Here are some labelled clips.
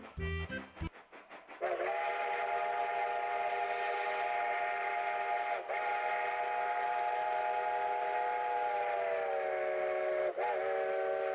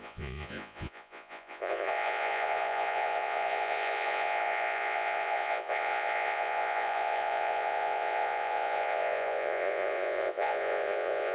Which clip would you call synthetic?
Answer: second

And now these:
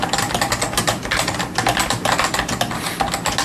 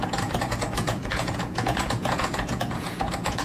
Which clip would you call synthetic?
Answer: second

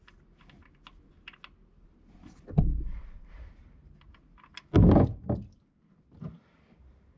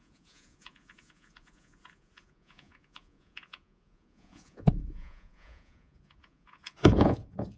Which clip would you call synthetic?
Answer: second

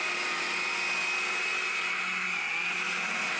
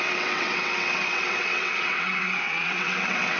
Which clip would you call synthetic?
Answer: second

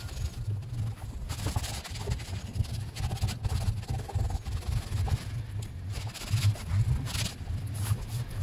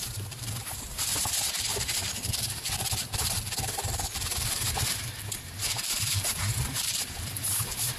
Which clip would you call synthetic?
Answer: second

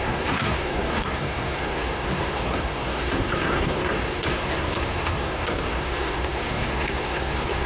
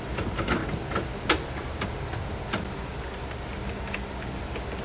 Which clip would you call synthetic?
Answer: first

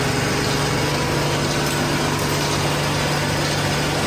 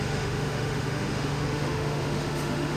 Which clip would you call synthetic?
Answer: second